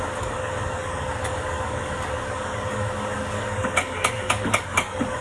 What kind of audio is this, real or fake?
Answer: fake